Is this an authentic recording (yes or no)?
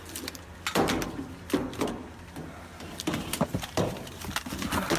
yes